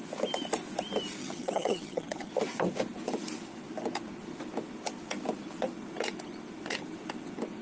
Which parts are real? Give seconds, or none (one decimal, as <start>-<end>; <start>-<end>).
0.0-1.2; 2.3-7.6